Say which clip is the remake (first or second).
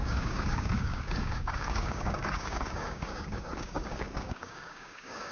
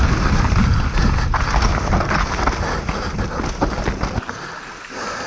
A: first